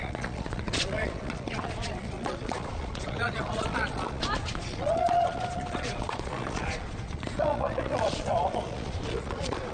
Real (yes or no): no